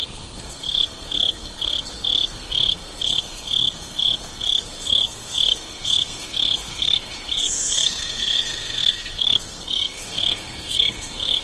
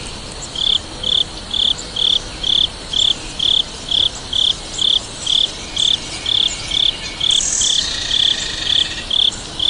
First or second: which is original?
second